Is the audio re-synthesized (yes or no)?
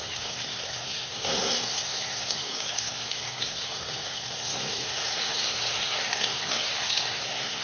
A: yes